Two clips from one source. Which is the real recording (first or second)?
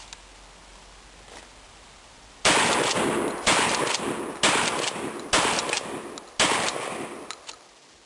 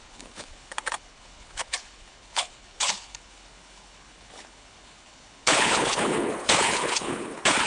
first